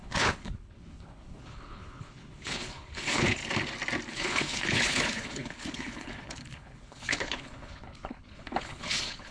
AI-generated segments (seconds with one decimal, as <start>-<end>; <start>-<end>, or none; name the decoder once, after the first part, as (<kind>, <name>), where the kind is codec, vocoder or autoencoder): 0.0-3.4 (codec, HILCodec); 4.1-9.3